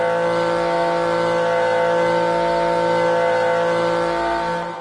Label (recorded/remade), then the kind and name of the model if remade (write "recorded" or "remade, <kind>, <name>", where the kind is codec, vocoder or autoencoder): recorded